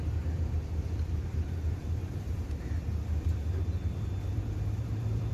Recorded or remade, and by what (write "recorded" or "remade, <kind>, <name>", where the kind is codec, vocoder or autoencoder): remade, vocoder, BigVGAN v2